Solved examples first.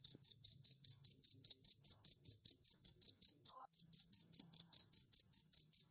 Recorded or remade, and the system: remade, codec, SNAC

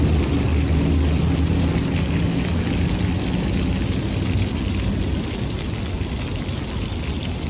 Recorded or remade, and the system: recorded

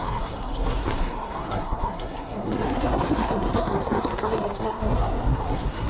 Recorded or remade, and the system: remade, codec, SNAC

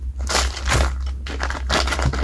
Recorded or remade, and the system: recorded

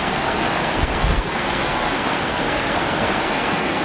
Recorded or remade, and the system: remade, codec, SNAC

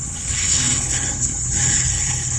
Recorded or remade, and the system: remade, codec, HILCodec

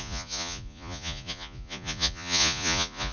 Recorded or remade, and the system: remade, vocoder, Vocos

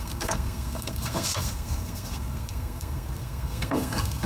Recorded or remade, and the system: remade, codec, SNAC